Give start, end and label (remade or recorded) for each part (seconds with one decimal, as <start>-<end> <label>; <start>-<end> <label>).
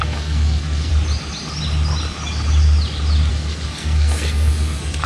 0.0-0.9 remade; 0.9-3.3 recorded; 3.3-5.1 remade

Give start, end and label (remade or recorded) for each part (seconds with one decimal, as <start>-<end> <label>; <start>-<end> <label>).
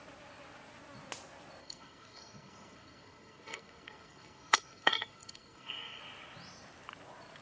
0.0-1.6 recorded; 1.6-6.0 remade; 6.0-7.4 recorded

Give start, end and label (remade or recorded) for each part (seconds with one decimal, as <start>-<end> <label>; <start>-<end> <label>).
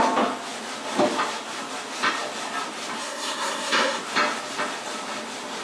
0.0-3.0 recorded; 3.0-4.0 remade; 4.0-5.6 recorded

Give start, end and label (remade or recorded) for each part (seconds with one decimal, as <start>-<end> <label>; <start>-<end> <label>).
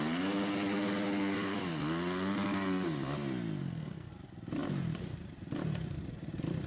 0.0-3.6 recorded; 3.6-4.1 remade; 4.1-6.7 recorded